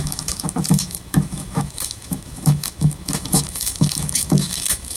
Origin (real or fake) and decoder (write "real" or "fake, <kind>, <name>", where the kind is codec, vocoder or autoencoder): fake, autoencoder, DAC-VAE